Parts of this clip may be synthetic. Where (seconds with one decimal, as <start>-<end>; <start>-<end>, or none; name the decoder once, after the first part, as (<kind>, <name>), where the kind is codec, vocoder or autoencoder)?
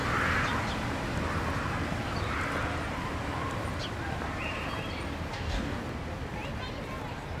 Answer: 5.3-5.8 (codec, DAC)